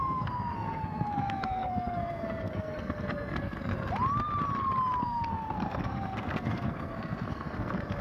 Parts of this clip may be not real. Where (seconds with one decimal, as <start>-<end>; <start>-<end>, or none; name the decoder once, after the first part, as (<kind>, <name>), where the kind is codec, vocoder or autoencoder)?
0.0-3.7 (codec, SNAC); 5.0-8.0

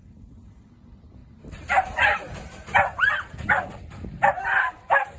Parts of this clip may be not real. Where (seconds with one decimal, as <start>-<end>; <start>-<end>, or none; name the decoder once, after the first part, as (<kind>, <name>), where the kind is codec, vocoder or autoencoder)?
none

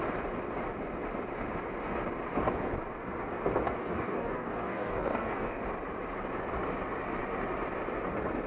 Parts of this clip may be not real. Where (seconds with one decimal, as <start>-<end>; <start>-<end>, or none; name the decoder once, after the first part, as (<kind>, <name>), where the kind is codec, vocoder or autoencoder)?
3.8-5.6 (codec, DAC)

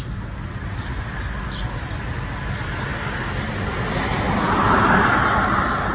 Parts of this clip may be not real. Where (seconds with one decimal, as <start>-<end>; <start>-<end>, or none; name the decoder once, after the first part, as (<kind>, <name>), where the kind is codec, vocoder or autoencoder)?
0.6-1.1 (vocoder, BigVGAN v2)

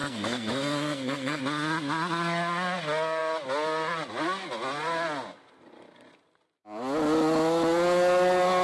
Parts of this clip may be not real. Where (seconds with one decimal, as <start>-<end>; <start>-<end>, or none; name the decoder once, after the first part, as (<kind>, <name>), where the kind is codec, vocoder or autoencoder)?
0.0-1.4 (codec, SNAC)